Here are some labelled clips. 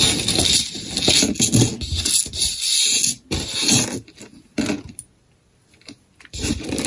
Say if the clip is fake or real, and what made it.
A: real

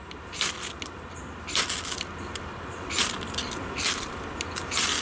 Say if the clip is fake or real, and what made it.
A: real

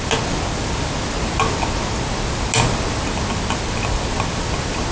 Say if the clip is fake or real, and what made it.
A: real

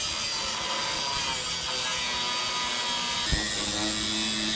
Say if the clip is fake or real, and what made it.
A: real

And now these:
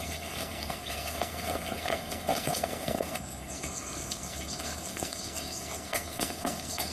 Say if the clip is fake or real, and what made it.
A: fake, codec, SNAC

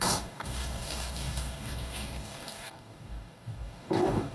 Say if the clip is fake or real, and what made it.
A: fake, codec, DAC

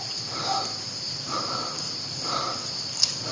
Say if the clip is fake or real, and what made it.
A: fake, vocoder, BigVGAN v2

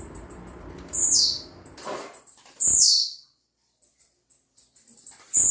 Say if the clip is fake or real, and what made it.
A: fake, vocoder, BigVGAN v2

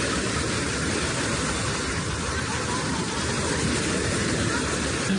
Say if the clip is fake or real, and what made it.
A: real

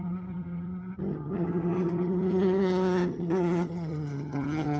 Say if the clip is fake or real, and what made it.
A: fake, vocoder, HiFi-GAN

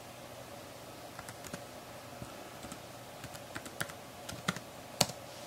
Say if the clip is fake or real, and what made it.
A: real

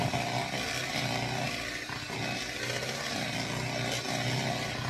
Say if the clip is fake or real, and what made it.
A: real